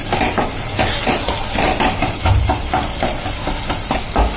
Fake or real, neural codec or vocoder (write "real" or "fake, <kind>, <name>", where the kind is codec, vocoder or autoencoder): real